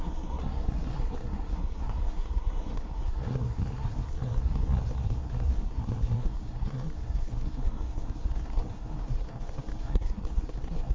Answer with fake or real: fake